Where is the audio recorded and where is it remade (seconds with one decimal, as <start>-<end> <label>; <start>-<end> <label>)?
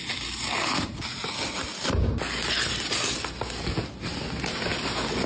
0.0-5.3 recorded